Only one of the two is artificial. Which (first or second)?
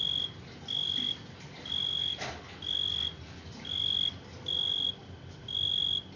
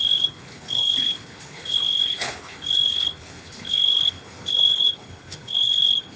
second